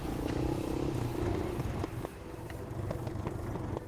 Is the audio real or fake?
real